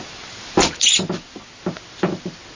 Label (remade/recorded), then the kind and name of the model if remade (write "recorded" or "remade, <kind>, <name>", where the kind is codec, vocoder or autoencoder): recorded